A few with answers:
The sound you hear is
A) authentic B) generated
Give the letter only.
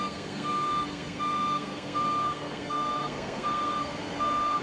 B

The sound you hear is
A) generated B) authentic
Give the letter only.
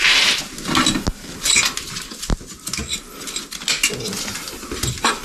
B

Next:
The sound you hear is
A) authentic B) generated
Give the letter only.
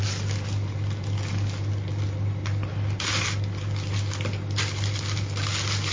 A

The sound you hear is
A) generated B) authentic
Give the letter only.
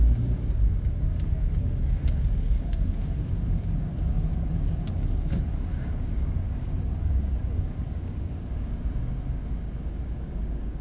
A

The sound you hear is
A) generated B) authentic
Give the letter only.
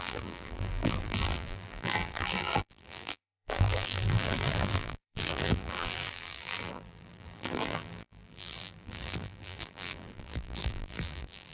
A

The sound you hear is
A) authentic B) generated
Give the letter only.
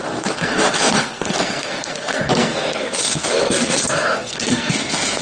B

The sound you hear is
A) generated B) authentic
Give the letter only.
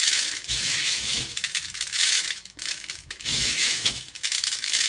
A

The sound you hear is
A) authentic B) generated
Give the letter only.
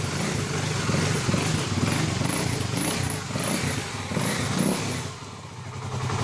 A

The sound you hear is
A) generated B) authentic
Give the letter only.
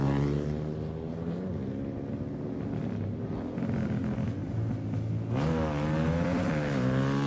B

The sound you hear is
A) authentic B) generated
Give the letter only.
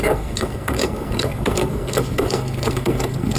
B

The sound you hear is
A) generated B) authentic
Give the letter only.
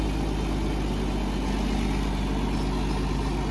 B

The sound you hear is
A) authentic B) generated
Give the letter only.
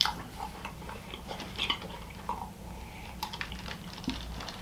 B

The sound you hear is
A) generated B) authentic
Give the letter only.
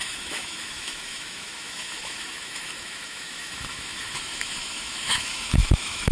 A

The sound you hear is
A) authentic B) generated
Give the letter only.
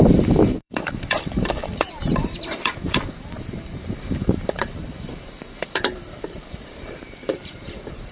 B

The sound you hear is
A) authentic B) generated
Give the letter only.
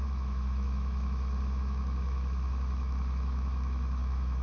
B